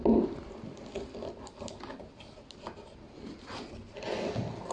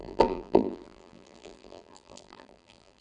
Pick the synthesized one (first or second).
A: second